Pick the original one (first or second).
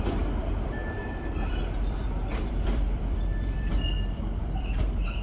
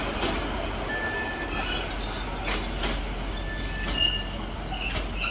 second